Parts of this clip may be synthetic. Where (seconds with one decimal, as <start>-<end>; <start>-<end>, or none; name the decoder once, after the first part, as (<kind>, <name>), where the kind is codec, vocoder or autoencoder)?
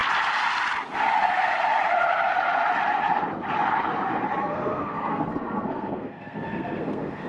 4.4-7.3 (codec, SNAC)